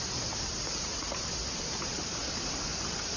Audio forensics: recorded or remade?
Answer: remade